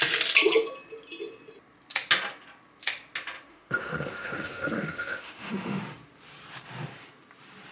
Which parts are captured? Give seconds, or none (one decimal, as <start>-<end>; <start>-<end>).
0.0-3.5; 5.8-7.7

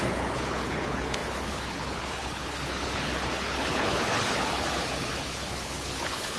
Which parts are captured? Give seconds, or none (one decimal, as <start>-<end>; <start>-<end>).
none

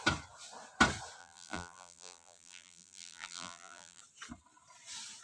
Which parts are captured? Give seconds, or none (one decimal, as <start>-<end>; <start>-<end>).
0.0-1.2; 4.0-5.2

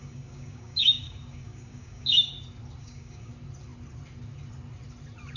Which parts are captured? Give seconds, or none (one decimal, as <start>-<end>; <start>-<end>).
2.3-2.8; 3.3-5.4